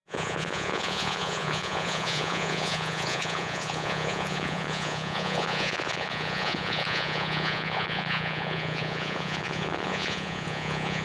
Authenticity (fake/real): fake